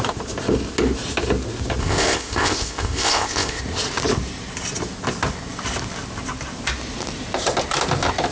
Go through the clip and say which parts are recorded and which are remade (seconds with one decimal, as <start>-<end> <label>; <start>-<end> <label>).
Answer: 0.0-1.8 recorded; 1.8-3.6 remade; 3.6-8.3 recorded